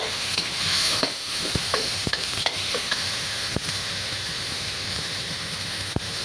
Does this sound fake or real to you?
fake